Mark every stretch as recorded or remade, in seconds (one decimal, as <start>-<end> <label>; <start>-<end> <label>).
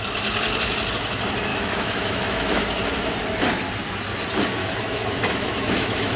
0.0-1.5 recorded; 1.5-2.6 remade; 2.6-4.6 recorded; 4.6-6.2 remade